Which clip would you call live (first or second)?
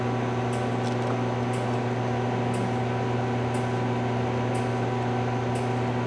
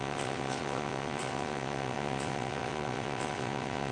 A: first